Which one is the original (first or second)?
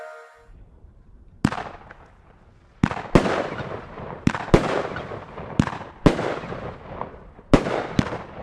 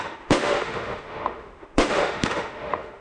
first